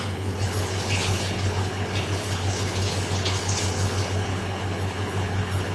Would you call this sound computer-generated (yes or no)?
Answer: yes